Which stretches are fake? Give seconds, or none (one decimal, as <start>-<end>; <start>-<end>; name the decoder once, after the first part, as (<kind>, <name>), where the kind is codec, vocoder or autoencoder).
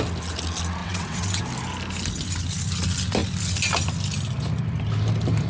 0.8-1.4 (vocoder, WaveNeXt)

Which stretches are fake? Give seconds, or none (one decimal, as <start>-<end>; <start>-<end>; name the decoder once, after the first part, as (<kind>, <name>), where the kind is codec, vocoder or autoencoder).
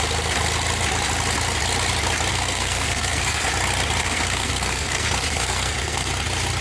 2.3-3.5 (codec, SNAC); 4.0-6.1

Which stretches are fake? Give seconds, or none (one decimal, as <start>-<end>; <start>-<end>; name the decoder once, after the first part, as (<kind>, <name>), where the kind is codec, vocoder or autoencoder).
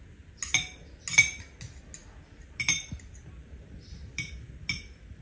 none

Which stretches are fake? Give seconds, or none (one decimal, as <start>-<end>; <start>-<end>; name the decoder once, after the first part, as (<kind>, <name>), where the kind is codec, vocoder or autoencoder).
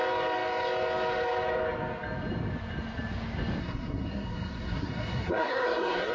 3.6-6.1 (codec, SNAC)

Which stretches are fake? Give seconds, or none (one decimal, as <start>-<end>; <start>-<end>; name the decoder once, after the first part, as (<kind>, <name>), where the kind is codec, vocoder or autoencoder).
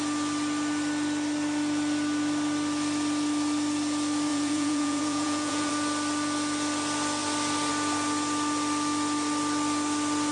4.3-5.7 (vocoder, Vocos)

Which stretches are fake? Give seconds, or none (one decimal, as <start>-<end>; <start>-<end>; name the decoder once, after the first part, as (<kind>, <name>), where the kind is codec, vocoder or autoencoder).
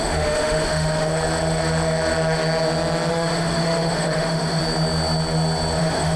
0.0-1.1 (autoencoder, DAC-VAE); 3.1-4.6; 5.8-6.2